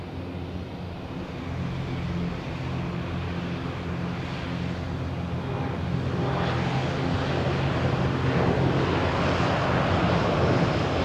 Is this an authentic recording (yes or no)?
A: yes